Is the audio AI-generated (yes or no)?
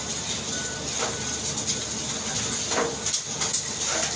no